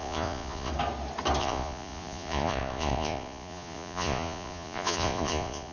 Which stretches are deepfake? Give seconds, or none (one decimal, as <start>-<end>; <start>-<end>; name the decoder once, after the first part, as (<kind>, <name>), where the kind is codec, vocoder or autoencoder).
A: 0.0-0.7 (vocoder, Vocos); 1.4-5.7